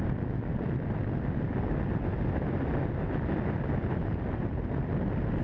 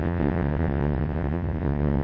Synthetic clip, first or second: second